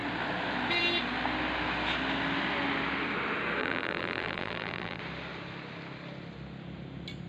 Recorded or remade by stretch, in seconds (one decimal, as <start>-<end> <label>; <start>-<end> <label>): 0.0-3.6 recorded; 3.6-5.0 remade; 5.0-7.3 recorded